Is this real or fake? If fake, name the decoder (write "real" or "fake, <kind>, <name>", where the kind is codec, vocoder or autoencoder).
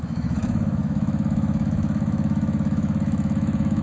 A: fake, autoencoder, DAC-VAE